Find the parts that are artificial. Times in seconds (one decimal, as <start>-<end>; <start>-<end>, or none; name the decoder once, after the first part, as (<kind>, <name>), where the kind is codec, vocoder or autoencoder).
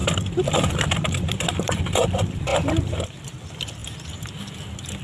0.5-2.5 (vocoder, BigVGAN v2); 3.2-3.8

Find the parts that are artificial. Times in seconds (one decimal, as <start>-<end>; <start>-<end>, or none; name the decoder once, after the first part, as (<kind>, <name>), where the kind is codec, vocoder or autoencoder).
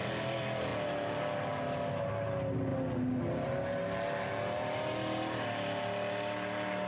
none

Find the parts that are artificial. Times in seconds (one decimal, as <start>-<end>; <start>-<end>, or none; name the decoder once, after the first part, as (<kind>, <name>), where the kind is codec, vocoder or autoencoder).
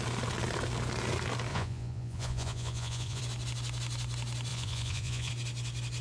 1.5-3.2 (vocoder, Vocos); 4.5-5.3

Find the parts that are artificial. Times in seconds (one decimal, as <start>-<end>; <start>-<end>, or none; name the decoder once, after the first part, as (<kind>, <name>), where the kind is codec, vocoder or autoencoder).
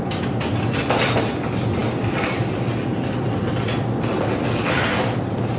none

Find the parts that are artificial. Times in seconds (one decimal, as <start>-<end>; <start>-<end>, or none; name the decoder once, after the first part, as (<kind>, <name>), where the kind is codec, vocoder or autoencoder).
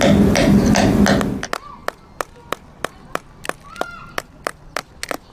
none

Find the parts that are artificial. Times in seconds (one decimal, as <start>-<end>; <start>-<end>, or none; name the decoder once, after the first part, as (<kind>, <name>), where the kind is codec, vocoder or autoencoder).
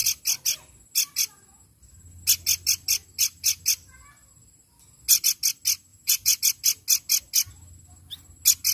5.9-6.4 (vocoder, Vocos)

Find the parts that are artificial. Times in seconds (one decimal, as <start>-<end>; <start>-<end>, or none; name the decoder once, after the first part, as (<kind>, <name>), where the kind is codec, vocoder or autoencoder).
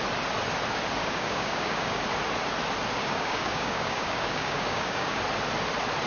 1.0-2.0 (codec, DAC); 3.0-5.2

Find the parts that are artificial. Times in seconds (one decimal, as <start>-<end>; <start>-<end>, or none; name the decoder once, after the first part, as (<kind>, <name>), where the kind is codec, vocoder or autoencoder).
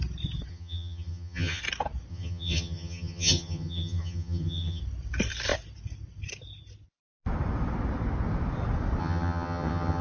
0.5-1.6 (vocoder, HiFi-GAN); 2.1-4.8; 9.0-10.0